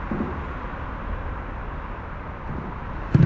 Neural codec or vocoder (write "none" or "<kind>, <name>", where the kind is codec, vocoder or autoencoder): none